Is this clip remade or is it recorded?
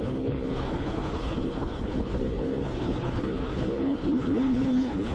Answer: remade